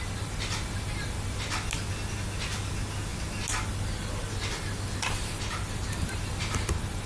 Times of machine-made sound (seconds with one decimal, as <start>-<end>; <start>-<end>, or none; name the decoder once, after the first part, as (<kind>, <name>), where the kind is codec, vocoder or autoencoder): none